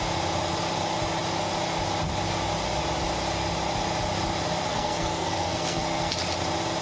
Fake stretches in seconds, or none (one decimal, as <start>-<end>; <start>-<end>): 4.7-6.1